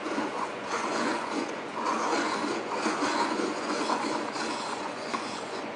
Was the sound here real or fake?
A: fake